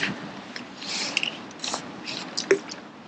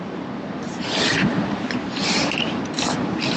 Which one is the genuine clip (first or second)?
first